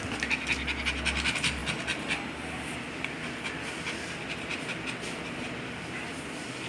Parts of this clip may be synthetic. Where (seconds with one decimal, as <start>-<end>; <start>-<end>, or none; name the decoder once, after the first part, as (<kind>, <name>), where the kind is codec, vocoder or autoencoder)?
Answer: none